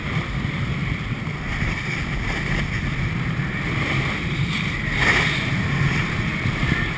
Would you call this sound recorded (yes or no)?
yes